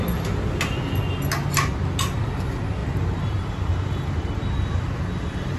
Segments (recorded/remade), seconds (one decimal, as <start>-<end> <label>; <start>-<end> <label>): 0.0-2.8 recorded; 2.8-4.9 remade; 4.9-5.6 recorded